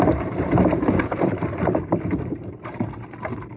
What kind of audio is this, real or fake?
fake